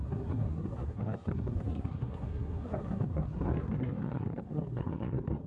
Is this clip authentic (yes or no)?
no